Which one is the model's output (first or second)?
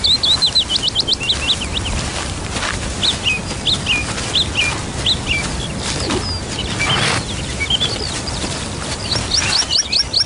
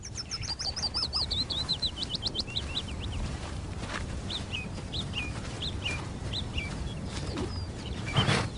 second